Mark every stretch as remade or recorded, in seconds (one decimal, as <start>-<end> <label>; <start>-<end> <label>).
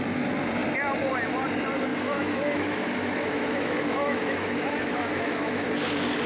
0.0-1.9 recorded; 1.9-5.7 remade; 5.7-6.3 recorded